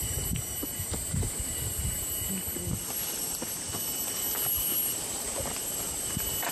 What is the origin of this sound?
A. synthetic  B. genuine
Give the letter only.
B